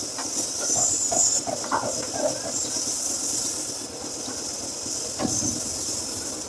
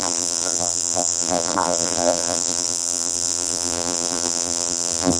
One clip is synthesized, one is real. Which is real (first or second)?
first